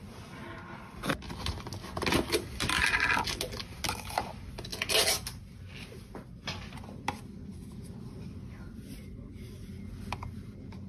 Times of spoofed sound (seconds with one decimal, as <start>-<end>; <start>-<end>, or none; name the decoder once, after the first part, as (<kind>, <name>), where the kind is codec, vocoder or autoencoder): none